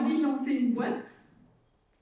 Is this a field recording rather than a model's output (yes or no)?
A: yes